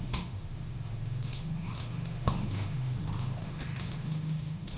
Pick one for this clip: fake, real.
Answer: fake